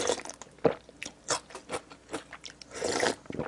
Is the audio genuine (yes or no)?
yes